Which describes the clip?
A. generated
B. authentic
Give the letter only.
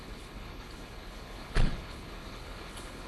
A